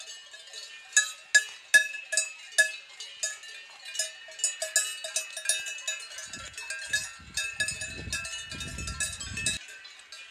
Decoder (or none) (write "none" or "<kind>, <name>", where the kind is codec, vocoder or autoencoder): none